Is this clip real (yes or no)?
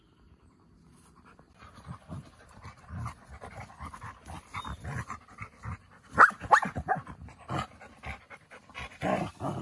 yes